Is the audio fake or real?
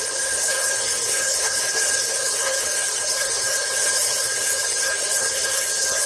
fake